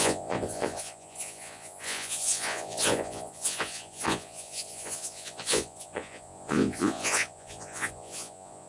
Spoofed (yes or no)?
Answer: yes